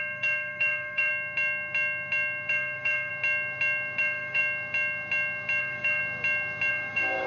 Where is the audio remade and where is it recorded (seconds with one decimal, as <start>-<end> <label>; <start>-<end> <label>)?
0.0-1.1 remade; 1.1-2.5 recorded; 2.5-3.1 remade; 3.1-4.0 recorded; 4.0-4.4 remade; 4.4-5.6 recorded; 5.6-6.0 remade; 6.0-6.7 recorded; 6.7-7.3 remade